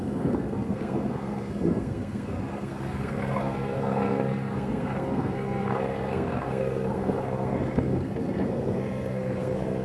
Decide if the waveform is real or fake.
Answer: fake